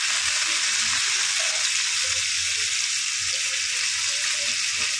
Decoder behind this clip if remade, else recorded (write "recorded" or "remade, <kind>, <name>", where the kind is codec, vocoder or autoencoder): recorded